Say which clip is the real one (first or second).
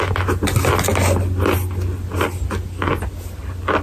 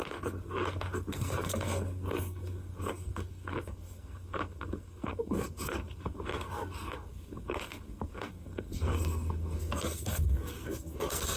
first